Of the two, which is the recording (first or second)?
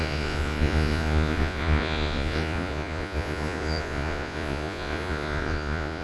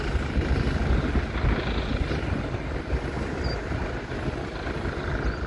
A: second